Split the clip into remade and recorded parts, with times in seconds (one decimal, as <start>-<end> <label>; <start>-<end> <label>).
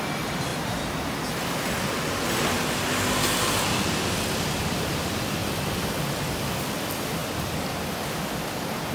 0.0-8.9 recorded